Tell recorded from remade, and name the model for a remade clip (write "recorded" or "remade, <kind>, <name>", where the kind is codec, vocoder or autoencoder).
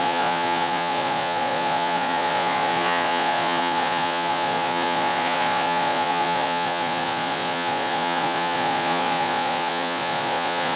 remade, vocoder, Vocos